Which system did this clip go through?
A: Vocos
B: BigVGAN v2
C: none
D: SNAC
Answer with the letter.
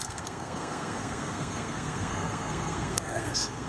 D